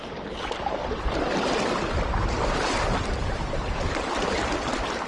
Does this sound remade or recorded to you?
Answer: recorded